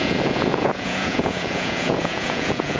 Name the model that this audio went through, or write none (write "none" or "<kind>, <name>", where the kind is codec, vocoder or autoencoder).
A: vocoder, Vocos